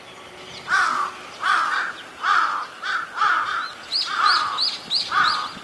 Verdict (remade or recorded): recorded